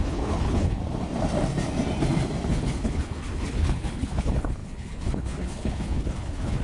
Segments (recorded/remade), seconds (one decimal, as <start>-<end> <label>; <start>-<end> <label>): 0.0-0.8 remade; 0.8-2.5 recorded; 2.5-6.6 remade

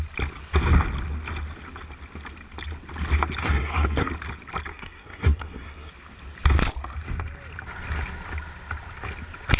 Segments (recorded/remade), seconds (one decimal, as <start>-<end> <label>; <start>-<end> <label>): 0.0-3.4 recorded; 3.4-4.1 remade; 4.1-4.7 recorded; 4.7-5.9 remade; 5.9-9.6 recorded

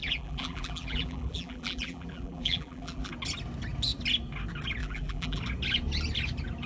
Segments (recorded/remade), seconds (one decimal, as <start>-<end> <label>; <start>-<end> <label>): 0.0-3.1 remade; 3.1-4.8 recorded; 4.8-5.4 remade; 5.4-6.7 recorded

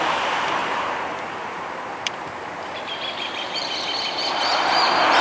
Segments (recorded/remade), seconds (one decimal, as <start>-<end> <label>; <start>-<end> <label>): 0.0-0.6 recorded; 0.6-3.7 remade; 3.7-5.2 recorded